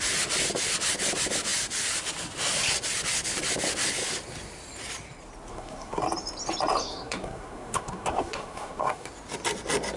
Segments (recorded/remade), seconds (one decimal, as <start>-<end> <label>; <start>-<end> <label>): 0.0-5.5 recorded; 5.5-6.0 remade; 6.0-6.8 recorded; 6.8-9.1 remade; 9.1-10.0 recorded